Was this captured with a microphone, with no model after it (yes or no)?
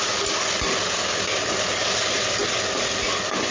yes